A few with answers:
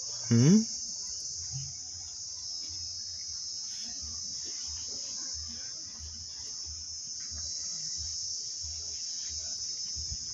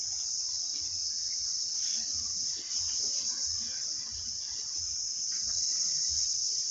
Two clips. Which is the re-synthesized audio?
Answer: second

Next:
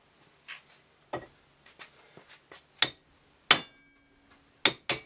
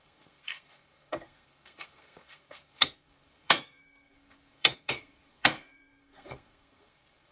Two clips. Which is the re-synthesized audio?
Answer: second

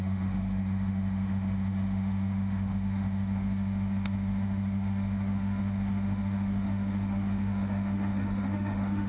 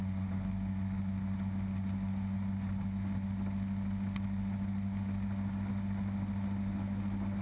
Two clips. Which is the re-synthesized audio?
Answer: first